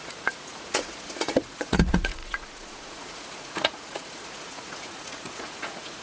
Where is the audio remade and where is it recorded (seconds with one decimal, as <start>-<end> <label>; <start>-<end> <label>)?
0.0-6.0 remade